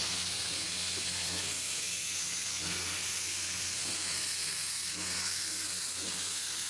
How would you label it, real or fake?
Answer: fake